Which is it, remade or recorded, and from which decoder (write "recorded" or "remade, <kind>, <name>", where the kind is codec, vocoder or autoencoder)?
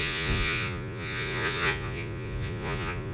remade, vocoder, Vocos